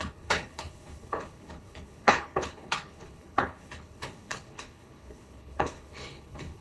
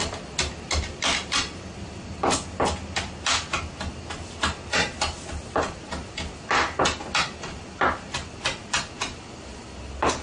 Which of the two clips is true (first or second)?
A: second